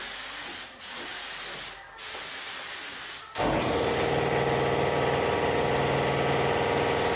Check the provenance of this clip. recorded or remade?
recorded